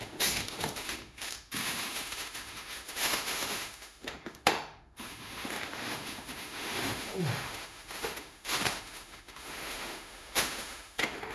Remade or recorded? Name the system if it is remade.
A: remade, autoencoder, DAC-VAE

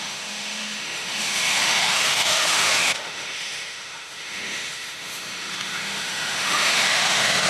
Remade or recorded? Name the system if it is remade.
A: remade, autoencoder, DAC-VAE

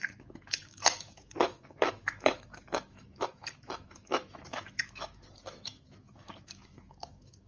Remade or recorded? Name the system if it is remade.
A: remade, autoencoder, DAC-VAE